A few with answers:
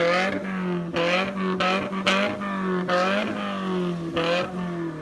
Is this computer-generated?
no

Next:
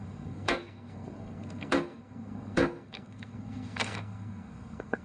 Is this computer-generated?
yes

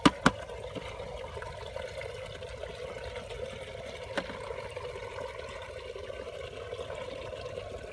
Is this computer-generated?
no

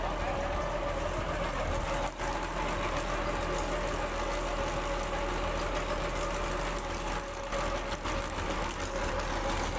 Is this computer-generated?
no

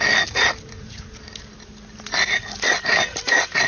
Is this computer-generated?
no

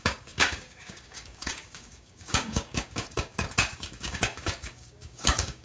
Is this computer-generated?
yes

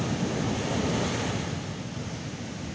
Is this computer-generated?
no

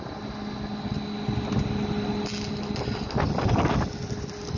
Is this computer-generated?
no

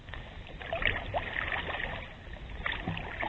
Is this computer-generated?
no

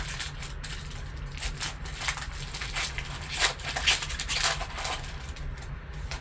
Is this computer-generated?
no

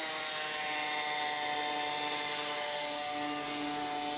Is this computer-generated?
no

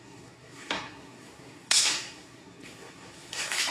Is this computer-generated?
yes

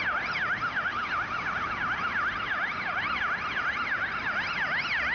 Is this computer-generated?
yes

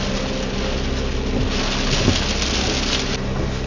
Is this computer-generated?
no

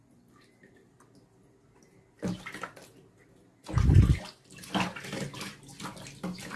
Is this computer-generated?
no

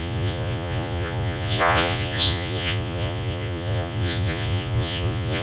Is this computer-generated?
yes